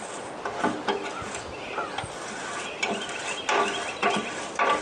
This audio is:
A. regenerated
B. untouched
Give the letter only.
B